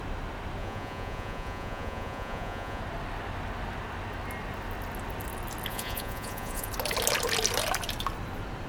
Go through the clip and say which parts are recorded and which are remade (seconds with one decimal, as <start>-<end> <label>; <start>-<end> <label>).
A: 0.0-0.6 recorded; 0.6-2.8 remade; 2.8-5.7 recorded; 5.7-6.7 remade; 6.7-8.7 recorded